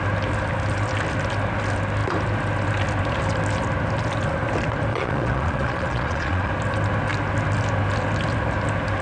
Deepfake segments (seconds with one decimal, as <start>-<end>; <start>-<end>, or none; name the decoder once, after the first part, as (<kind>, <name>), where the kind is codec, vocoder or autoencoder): 4.9-6.5 (vocoder, Vocos)